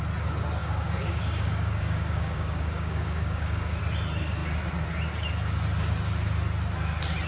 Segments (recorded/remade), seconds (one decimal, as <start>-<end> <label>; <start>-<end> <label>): 0.0-0.6 recorded; 0.6-3.8 remade; 3.8-7.3 recorded